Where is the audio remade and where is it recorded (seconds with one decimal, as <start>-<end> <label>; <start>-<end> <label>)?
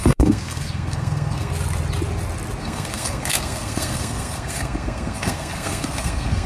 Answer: 0.0-1.5 remade; 1.5-2.6 recorded; 2.6-6.5 remade